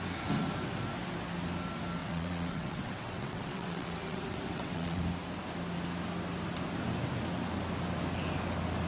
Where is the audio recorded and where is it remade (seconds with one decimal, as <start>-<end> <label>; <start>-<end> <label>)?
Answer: 0.0-2.0 recorded; 2.0-5.0 remade; 5.0-8.9 recorded